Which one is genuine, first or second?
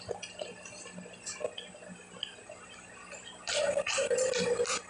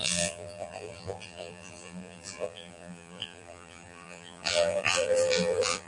first